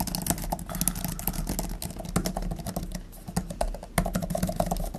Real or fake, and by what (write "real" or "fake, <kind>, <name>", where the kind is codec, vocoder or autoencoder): real